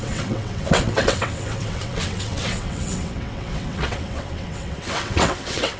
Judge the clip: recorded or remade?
remade